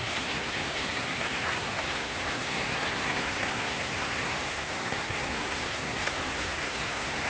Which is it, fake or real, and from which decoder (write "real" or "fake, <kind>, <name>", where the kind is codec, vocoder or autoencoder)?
fake, codec, SNAC